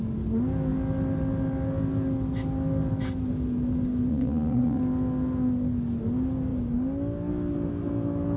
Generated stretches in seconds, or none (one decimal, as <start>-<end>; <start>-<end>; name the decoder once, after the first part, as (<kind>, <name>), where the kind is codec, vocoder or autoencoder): 4.1-4.8 (vocoder, Vocos)